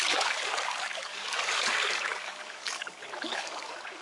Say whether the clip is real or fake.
fake